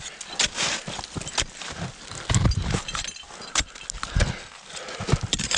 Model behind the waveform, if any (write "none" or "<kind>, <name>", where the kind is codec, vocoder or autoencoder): none